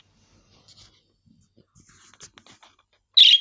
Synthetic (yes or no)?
no